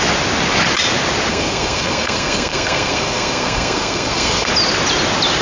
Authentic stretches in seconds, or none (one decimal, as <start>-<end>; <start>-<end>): 0.0-1.3; 4.5-5.4